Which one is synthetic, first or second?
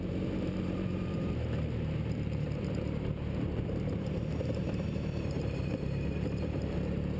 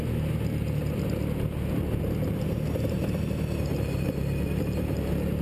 first